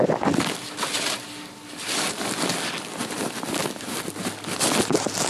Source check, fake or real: real